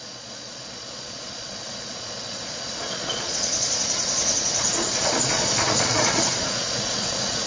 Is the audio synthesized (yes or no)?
yes